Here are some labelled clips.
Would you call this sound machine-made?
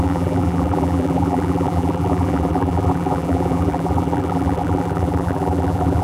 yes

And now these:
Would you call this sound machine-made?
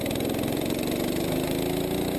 no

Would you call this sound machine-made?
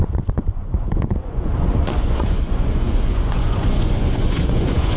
yes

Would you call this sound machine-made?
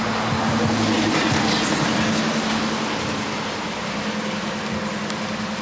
no